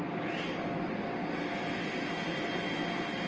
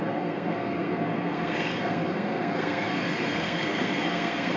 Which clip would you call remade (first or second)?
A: second